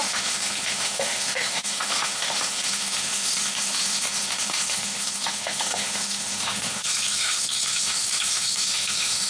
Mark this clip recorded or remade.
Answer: remade